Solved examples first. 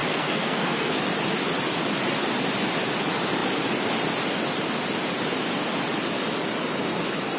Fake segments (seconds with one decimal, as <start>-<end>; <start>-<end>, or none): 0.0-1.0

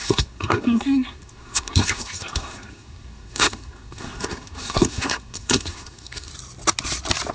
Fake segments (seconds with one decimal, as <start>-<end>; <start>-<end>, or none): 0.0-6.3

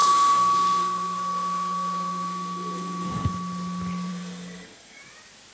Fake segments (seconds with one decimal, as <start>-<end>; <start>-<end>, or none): 0.0-3.3; 4.1-5.0

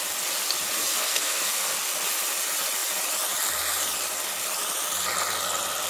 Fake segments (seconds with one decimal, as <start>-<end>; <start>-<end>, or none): 0.9-1.7

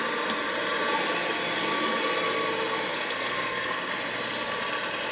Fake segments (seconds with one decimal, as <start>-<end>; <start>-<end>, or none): 2.9-3.9

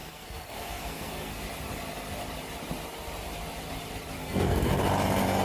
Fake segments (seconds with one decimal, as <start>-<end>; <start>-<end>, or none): 0.0-1.3; 4.2-4.8

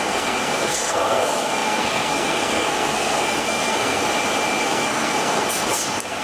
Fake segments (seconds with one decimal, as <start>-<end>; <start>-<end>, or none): 0.0-4.0; 4.6-6.2

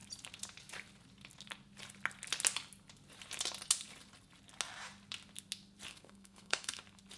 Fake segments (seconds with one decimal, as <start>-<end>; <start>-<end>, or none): 5.9-6.8